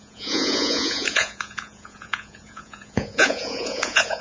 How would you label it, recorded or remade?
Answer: remade